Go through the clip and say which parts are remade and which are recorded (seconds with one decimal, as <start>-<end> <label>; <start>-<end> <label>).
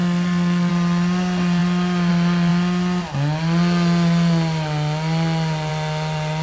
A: 0.0-0.7 remade; 0.7-6.4 recorded